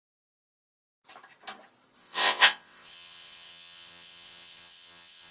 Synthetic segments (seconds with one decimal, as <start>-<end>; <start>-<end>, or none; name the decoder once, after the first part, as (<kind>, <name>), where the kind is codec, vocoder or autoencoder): 2.0-5.3 (vocoder, WaveNeXt)